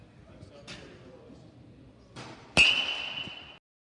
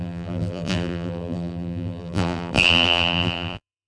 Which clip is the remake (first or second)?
second